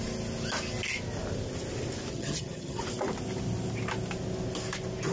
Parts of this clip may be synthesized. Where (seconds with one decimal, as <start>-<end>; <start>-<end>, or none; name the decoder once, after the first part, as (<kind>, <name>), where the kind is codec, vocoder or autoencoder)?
2.1-2.8 (vocoder, HiFi-GAN)